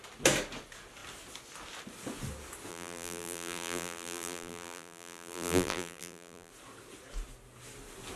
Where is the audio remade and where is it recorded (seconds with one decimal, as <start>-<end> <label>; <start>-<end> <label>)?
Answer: 0.0-2.7 recorded; 2.7-6.5 remade; 6.5-8.2 recorded